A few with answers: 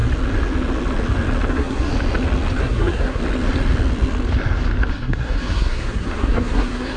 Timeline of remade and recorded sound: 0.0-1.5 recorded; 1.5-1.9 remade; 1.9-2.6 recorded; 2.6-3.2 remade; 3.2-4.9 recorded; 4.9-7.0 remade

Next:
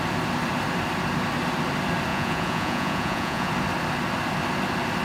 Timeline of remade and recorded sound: 0.0-2.1 recorded; 2.1-3.5 remade; 3.5-5.0 recorded

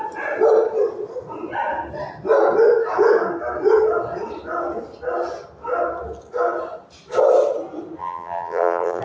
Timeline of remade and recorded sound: 0.0-8.0 recorded; 8.0-9.0 remade

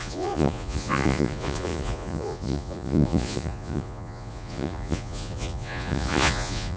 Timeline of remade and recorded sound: 0.0-6.8 remade

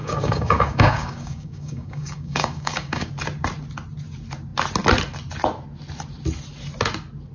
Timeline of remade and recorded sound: 0.0-3.1 remade; 3.1-7.3 recorded